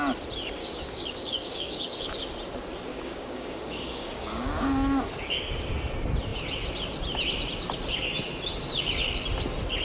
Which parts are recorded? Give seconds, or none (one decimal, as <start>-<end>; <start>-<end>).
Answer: 0.0-0.6; 2.2-2.9; 5.7-9.8